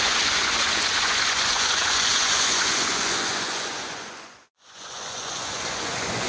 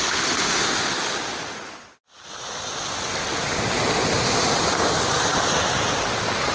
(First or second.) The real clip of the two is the second